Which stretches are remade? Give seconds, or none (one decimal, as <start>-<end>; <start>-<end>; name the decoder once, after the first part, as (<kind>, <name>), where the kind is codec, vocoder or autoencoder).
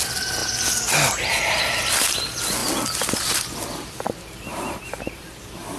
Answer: 0.0-0.4 (vocoder, BigVGAN v2); 1.4-2.6; 4.1-5.8